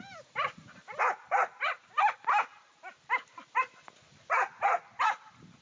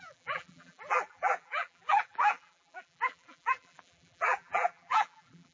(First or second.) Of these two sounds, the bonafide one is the first